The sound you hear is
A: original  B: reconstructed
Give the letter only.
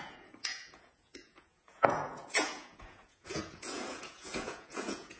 B